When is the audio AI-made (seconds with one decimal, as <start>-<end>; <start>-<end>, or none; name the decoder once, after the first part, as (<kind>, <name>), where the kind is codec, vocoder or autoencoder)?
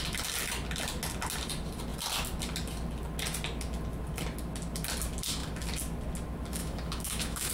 6.6-7.5 (autoencoder, DAC-VAE)